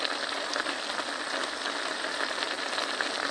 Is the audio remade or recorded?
recorded